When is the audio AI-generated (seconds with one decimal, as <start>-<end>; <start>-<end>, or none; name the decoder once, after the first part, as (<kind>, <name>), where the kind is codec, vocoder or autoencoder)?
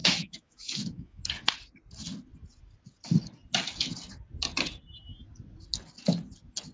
0.0-1.2 (autoencoder, DAC-VAE)